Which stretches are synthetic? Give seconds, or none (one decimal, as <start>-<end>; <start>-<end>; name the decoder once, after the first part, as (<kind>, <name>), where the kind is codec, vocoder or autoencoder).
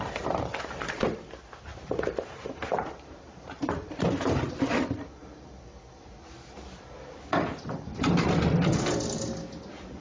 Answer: 1.7-4.5 (vocoder, BigVGAN v2)